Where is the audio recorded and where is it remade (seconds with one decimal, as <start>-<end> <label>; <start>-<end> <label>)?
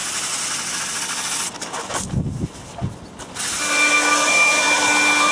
0.0-5.3 recorded